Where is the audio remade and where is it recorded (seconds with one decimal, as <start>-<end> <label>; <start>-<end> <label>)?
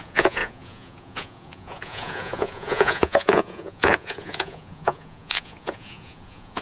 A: 0.0-6.6 remade